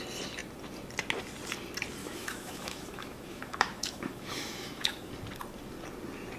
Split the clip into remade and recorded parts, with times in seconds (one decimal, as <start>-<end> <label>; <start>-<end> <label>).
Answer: 0.0-2.0 recorded; 2.0-5.1 remade; 5.1-6.4 recorded